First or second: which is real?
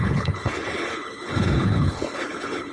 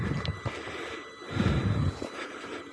second